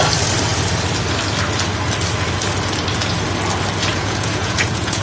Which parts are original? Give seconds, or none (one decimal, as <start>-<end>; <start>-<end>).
0.0-3.9